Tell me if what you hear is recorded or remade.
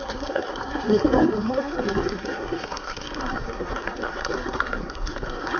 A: remade